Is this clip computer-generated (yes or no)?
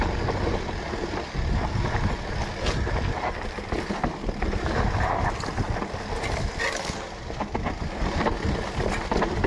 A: no